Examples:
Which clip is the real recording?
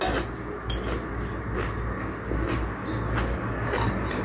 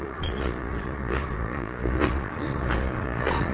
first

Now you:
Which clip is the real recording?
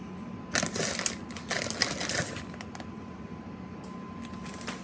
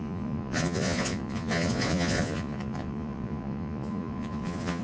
first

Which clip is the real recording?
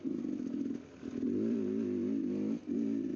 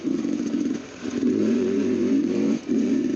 first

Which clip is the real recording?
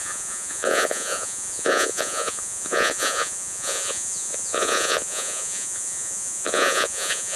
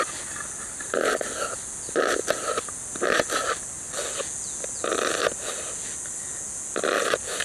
second